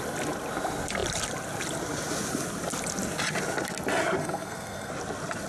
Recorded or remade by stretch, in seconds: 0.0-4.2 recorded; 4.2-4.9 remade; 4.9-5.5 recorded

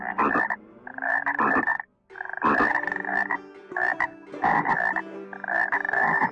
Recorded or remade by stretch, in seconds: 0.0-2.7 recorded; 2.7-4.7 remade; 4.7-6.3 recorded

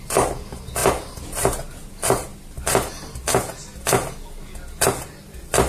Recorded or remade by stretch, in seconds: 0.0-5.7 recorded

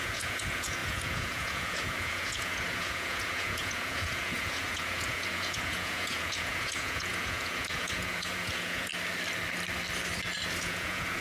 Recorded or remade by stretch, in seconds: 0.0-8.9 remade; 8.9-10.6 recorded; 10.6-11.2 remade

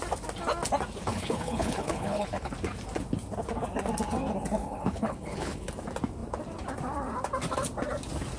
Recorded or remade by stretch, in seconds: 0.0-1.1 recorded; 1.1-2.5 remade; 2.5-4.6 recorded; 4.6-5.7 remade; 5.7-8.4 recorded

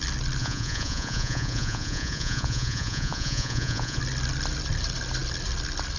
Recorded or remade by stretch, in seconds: 0.0-0.4 recorded; 0.4-4.0 remade; 4.0-6.0 recorded